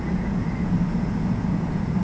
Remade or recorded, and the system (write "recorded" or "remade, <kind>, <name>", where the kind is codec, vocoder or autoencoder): remade, vocoder, Vocos